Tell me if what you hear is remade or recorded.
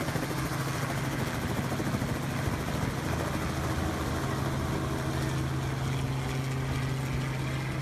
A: recorded